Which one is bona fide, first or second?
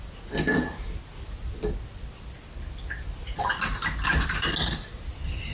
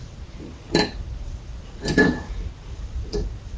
first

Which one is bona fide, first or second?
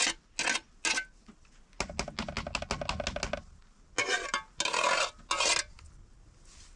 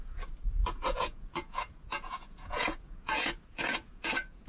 first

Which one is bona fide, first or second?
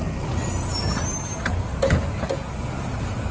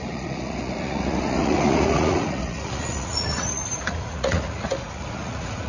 first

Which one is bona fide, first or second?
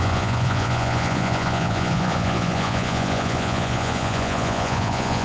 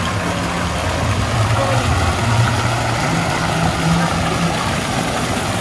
second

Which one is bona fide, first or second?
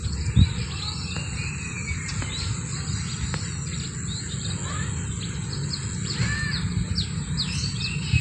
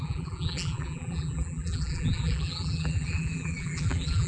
first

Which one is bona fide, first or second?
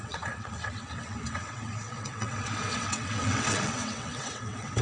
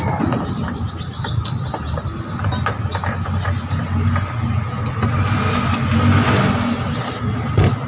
second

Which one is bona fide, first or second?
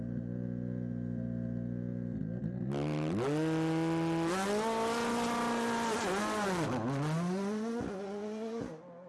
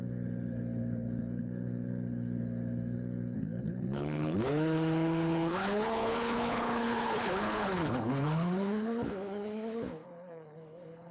first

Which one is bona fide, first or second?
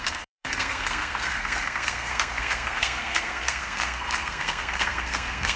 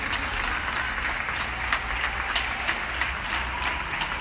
second